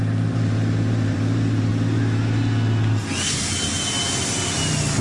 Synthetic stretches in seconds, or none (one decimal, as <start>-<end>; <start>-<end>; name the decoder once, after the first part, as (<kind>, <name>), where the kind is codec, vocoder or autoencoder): 0.0-1.7 (vocoder, BigVGAN v2)